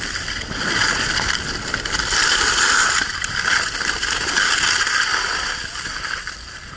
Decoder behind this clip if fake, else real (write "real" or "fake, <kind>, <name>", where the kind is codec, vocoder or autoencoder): real